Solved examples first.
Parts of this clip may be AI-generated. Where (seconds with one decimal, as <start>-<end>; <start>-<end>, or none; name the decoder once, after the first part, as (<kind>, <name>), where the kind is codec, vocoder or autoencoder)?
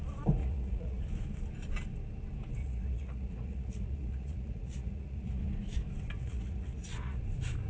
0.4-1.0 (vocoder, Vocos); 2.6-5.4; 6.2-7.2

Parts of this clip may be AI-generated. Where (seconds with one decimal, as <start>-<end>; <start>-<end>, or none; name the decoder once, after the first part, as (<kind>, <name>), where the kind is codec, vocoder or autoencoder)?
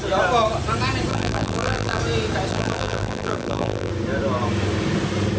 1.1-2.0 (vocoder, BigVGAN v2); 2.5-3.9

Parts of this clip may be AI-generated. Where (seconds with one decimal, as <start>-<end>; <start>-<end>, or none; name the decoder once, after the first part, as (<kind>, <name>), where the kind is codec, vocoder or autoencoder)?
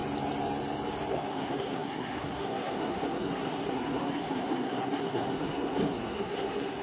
1.1-6.8 (codec, SNAC)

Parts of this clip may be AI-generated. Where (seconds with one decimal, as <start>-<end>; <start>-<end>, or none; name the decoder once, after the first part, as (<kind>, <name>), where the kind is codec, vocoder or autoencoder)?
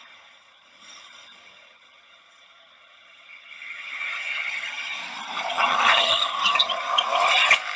0.0-5.0 (vocoder, HiFi-GAN); 5.5-6.9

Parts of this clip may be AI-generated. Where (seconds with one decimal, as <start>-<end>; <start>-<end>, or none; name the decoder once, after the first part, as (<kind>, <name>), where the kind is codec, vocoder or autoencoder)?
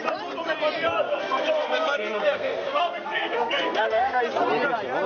1.1-4.2 (codec, SNAC)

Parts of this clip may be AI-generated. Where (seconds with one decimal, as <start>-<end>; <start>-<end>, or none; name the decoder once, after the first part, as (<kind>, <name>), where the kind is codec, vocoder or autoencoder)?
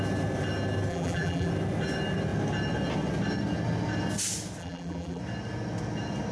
0.9-1.5 (vocoder, BigVGAN v2); 4.6-5.2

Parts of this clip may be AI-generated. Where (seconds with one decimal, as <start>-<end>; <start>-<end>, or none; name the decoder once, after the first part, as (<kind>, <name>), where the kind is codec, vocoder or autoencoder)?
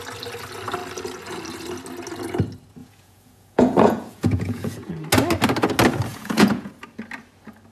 2.8-4.9 (vocoder, Vocos); 6.1-6.7